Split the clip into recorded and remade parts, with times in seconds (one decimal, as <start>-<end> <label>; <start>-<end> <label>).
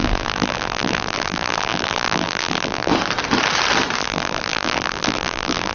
0.0-2.9 remade; 2.9-4.0 recorded; 4.0-5.7 remade